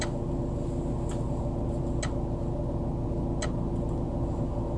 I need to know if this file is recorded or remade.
recorded